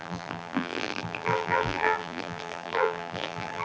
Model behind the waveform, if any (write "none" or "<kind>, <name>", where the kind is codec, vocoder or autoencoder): vocoder, BigVGAN v2